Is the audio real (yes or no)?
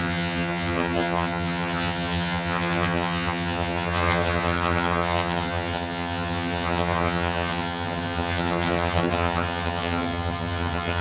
no